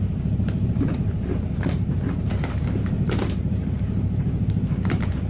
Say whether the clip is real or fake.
fake